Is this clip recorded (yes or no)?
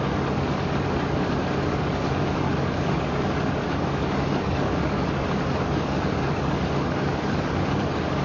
no